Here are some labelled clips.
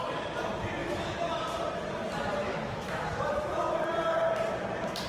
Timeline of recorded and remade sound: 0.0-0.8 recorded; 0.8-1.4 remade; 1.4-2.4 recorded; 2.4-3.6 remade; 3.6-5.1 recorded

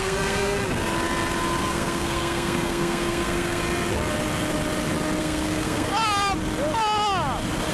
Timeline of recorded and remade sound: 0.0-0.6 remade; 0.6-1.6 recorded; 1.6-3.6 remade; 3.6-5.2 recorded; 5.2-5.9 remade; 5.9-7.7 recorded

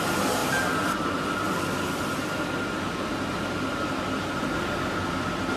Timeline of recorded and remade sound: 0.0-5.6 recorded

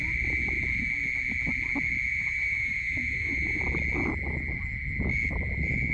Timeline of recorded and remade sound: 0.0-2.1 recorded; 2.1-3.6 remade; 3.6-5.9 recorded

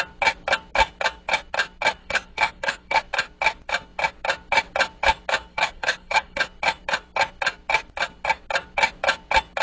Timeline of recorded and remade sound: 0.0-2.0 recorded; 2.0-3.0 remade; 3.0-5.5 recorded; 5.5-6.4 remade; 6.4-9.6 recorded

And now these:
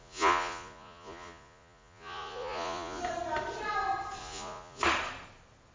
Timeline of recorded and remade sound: 0.0-3.0 remade; 3.0-4.2 recorded; 4.2-4.8 remade; 4.8-5.7 recorded

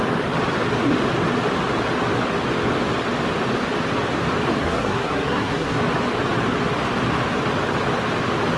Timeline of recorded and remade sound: 0.0-4.6 recorded; 4.6-5.8 remade; 5.8-8.6 recorded